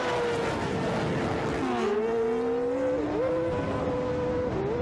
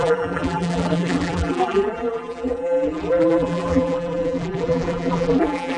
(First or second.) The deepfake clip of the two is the second